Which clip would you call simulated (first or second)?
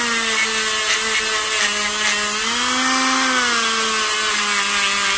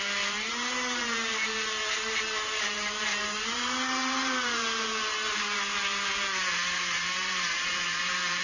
second